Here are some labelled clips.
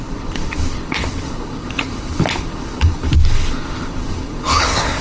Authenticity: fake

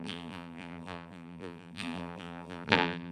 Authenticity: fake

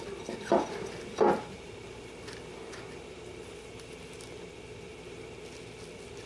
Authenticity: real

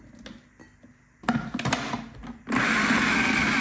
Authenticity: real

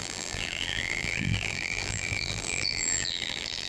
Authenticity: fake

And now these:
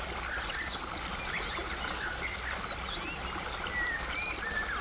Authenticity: real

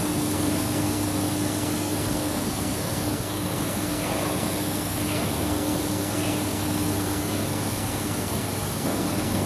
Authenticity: fake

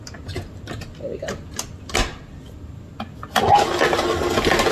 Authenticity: real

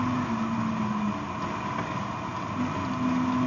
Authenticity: real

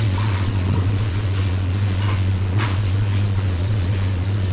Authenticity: fake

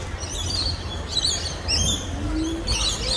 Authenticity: real